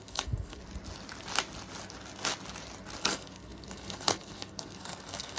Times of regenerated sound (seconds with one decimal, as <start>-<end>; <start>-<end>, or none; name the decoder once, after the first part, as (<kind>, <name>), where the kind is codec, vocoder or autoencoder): 0.0-0.6 (codec, SNAC); 3.0-5.4